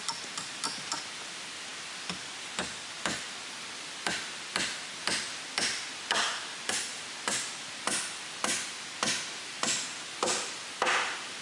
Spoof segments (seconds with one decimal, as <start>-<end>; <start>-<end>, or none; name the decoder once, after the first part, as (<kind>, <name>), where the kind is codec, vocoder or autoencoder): none